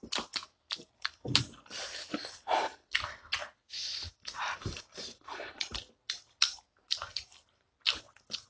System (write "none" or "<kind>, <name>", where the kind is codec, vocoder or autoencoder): none